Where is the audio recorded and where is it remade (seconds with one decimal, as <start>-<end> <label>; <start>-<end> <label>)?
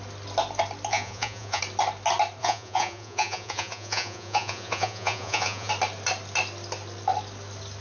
0.0-0.9 recorded; 0.9-1.6 remade; 1.6-2.4 recorded; 2.4-5.7 remade; 5.7-7.8 recorded